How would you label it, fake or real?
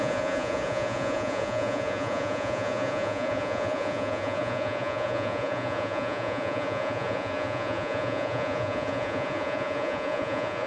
fake